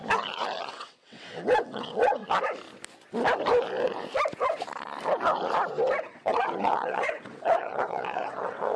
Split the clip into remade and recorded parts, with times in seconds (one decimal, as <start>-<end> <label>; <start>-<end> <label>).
0.0-0.7 recorded; 0.7-2.2 remade; 2.2-6.0 recorded; 6.0-8.8 remade